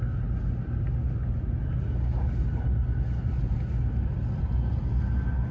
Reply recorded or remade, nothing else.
recorded